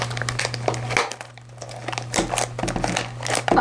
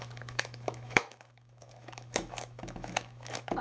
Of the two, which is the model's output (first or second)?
second